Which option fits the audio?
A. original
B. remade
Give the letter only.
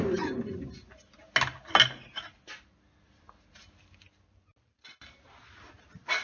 A